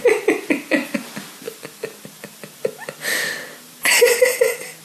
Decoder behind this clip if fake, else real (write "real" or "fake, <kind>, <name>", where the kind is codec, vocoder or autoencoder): real